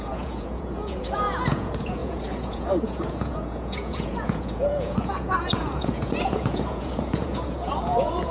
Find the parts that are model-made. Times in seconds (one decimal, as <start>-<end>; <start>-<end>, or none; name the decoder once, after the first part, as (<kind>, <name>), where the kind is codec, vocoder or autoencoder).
0.0-8.3 (vocoder, Vocos)